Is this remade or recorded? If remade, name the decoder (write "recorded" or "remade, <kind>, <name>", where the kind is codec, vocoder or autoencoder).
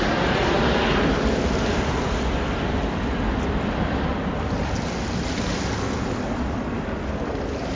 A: recorded